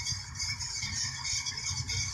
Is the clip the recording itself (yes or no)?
yes